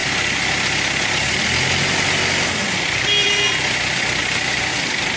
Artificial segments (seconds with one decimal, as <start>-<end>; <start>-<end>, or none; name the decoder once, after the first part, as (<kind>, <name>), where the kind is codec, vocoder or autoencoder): 4.2-4.7 (vocoder, BigVGAN v2)

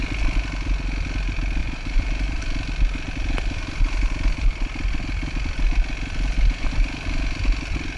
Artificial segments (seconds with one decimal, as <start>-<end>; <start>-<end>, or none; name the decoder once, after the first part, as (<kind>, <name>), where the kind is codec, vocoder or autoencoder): 1.6-2.4 (vocoder, BigVGAN v2)